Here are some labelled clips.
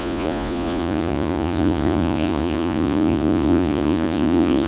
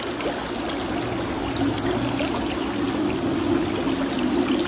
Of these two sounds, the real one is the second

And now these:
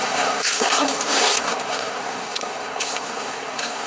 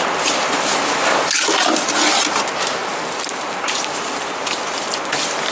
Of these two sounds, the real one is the second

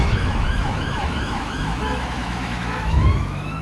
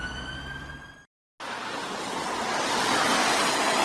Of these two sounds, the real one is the second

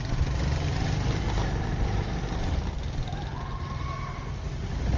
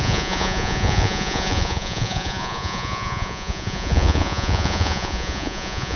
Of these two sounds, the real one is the first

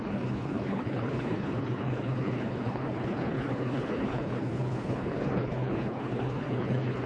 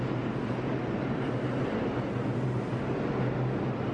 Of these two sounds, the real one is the second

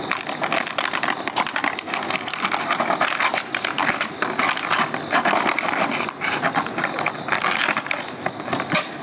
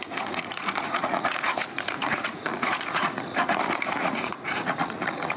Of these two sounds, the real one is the first